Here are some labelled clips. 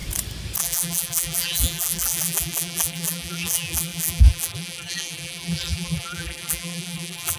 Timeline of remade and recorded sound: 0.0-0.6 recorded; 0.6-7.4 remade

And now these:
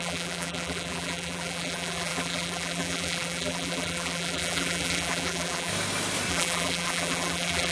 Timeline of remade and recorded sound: 0.0-5.7 remade; 5.7-6.3 recorded; 6.3-7.7 remade

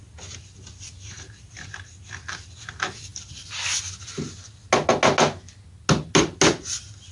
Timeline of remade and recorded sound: 0.0-7.1 recorded

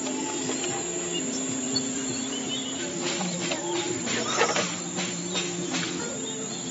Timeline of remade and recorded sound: 0.0-1.6 recorded; 1.6-5.4 remade; 5.4-6.7 recorded